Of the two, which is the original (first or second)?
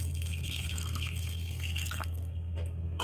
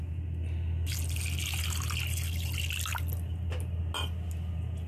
second